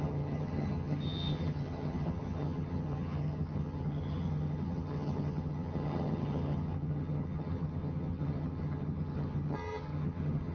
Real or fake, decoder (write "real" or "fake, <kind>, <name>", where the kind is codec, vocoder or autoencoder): fake, vocoder, HiFi-GAN